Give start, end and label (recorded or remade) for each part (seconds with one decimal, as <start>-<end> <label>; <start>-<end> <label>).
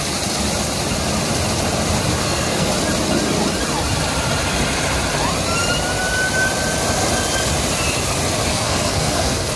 0.0-2.2 recorded; 2.2-2.7 remade; 2.7-8.5 recorded; 8.5-9.6 remade